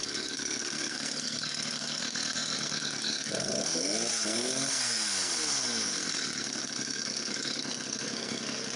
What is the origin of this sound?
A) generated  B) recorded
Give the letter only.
A